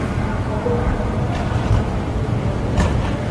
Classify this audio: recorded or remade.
remade